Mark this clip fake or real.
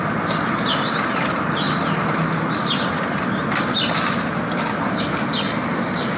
real